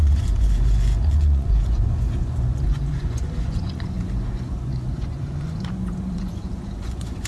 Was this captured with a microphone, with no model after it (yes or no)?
no